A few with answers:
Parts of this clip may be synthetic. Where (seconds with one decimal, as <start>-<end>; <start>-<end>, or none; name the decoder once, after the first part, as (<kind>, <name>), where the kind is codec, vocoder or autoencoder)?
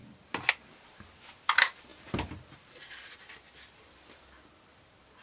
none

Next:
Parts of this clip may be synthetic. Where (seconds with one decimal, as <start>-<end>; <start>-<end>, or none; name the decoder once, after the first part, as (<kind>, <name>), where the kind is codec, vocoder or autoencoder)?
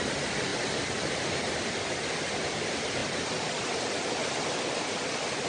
0.0-0.5 (vocoder, BigVGAN v2); 1.6-5.5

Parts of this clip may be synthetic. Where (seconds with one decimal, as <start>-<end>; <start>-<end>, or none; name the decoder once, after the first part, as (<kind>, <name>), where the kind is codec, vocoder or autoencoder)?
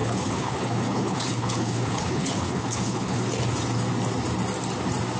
0.0-3.2 (codec, HILCodec)